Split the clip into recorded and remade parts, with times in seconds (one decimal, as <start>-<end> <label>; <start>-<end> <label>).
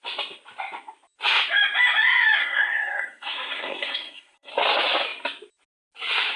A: 0.0-2.4 recorded; 2.4-4.5 remade; 4.5-6.4 recorded